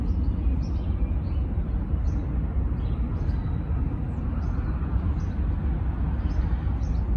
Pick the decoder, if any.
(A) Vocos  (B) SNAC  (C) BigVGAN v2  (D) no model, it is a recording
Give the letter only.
D